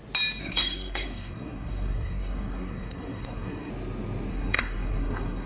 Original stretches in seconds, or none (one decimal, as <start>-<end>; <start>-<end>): 0.0-0.4; 3.7-4.3